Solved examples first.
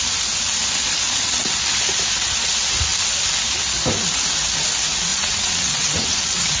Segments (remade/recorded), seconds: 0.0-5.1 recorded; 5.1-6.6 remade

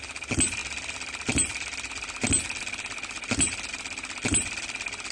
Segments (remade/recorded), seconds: 0.0-5.1 recorded

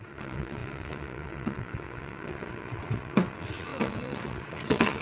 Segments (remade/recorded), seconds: 0.0-5.0 remade

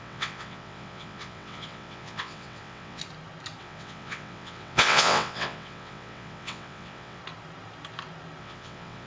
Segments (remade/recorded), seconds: 0.0-3.0 remade; 3.0-3.6 recorded; 3.6-7.2 remade; 7.2-8.4 recorded; 8.4-9.1 remade

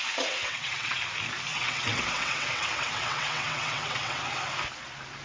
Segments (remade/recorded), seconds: 0.0-0.4 recorded; 0.4-1.0 remade; 1.0-1.5 recorded; 1.5-4.2 remade; 4.2-5.2 recorded